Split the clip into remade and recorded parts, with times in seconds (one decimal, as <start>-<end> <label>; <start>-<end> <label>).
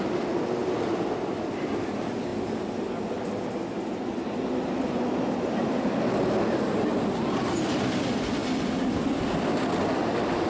0.0-10.5 recorded